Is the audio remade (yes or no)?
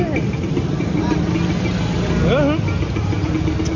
no